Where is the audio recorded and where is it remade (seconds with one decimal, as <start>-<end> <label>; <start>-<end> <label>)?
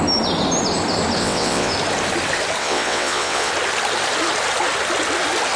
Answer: 0.0-1.2 recorded; 1.2-1.7 remade; 1.7-2.6 recorded; 2.6-3.5 remade; 3.5-5.6 recorded